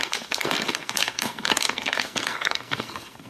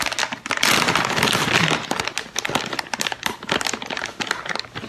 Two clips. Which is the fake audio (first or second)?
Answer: first